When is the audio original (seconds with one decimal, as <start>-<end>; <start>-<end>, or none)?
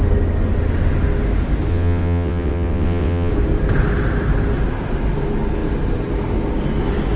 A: 0.0-1.7; 3.3-7.2